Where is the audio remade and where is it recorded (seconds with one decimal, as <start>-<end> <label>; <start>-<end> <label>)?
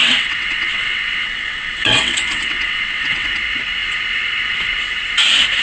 0.0-3.4 remade; 3.4-5.6 recorded